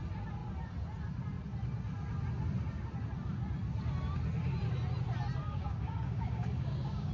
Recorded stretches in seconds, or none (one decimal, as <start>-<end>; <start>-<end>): 0.0-5.4